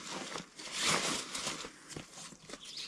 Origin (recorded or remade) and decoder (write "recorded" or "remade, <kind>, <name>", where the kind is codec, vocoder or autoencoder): recorded